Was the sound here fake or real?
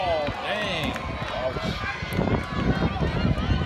real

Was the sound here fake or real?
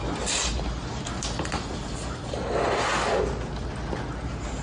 real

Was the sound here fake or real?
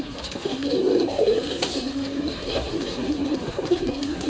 fake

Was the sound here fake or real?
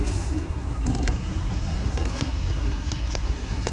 fake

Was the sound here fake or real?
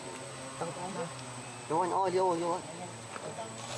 real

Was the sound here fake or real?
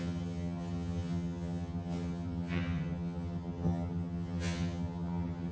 fake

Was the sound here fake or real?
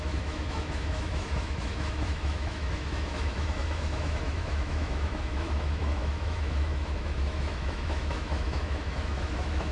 fake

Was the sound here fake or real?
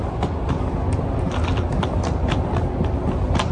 real